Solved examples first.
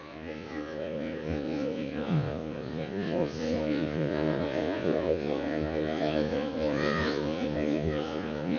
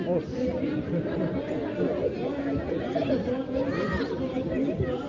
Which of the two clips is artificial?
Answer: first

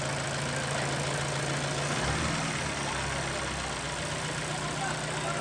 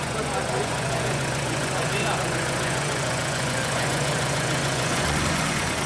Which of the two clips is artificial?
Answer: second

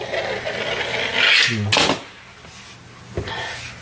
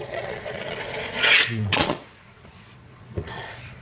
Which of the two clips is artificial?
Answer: second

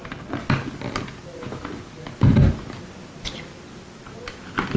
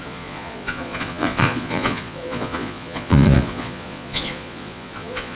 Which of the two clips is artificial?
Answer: second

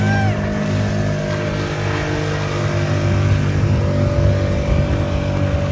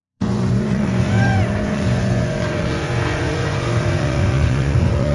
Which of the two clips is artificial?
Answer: second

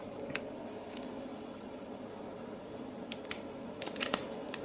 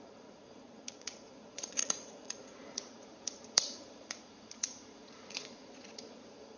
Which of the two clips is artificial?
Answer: second